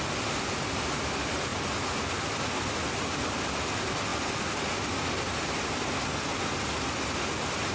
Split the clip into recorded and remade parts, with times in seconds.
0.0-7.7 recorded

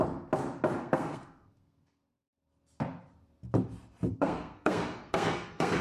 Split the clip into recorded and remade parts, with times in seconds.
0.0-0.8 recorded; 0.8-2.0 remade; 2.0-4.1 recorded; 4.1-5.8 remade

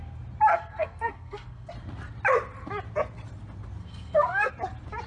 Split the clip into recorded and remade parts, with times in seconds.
0.0-0.5 recorded; 0.5-1.7 remade; 1.7-3.8 recorded; 3.8-4.5 remade; 4.5-5.1 recorded

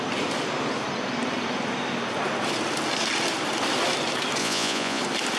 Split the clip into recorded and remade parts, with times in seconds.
0.0-4.4 recorded; 4.4-5.0 remade; 5.0-5.4 recorded

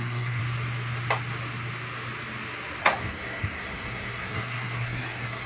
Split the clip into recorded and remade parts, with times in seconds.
0.0-0.4 remade; 0.4-2.8 recorded; 2.8-5.5 remade

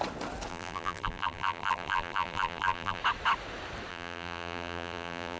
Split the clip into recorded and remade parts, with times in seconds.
0.0-0.5 recorded; 0.5-3.0 remade; 3.0-3.9 recorded; 3.9-5.4 remade